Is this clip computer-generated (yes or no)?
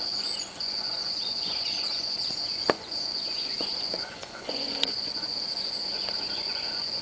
yes